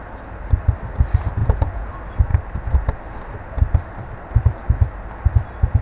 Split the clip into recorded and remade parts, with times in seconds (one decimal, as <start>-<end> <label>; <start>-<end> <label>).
0.0-1.4 recorded; 1.4-1.9 remade; 1.9-5.8 recorded